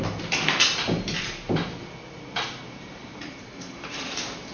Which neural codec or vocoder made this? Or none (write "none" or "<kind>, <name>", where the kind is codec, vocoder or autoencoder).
vocoder, BigVGAN v2